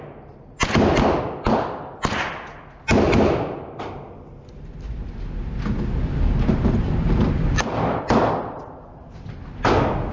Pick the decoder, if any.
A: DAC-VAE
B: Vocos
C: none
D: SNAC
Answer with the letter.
C